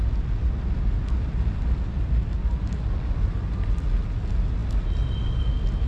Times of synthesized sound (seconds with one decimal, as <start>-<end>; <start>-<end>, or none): none